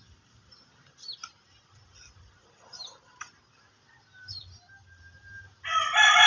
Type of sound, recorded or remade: recorded